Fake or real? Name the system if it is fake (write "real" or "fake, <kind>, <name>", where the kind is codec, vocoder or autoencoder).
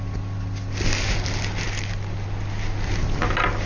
real